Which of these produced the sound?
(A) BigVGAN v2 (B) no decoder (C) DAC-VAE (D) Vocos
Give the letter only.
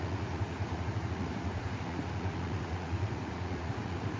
D